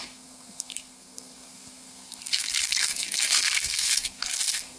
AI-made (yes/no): yes